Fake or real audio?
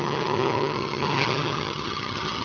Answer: fake